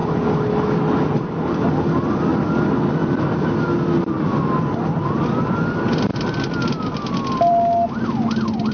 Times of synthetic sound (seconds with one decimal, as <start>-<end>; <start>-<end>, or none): none